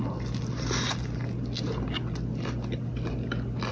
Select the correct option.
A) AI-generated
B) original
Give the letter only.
B